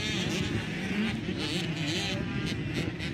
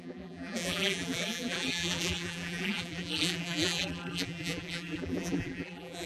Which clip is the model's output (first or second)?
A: second